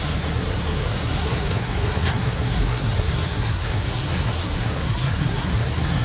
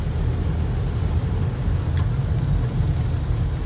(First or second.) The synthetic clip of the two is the first